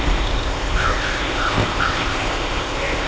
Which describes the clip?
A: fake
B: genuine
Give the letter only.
A